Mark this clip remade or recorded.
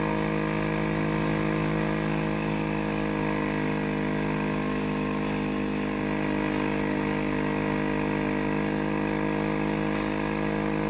recorded